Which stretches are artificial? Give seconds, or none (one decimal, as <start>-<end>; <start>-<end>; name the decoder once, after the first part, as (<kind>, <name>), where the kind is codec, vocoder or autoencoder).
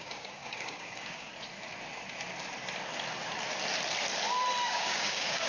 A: 0.0-1.3 (codec, DAC); 4.6-5.5